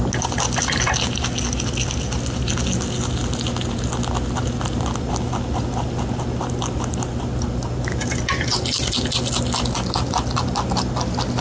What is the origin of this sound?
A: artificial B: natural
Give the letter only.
B